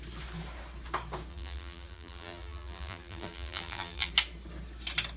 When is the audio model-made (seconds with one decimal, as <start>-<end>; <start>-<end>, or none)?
1.3-4.1